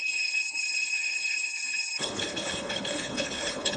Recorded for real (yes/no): no